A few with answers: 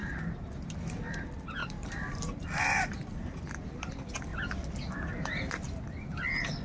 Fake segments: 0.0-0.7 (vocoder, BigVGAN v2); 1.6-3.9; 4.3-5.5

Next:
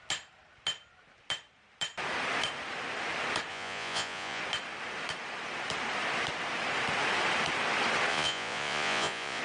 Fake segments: 3.5-4.4 (vocoder, Vocos); 8.1-9.4

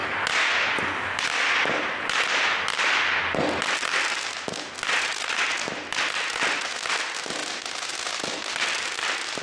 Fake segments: none

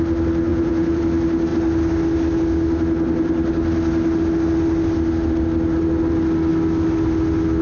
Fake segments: 0.5-1.0 (vocoder, Vocos)

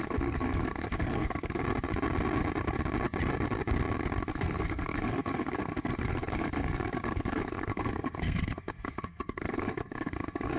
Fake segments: 0.0-1.6 (codec, SNAC); 4.3-10.6

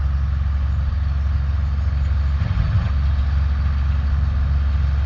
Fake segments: 2.4-2.9 (vocoder, HiFi-GAN)